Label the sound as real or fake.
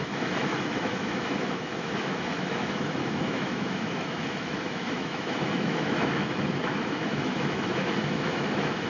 fake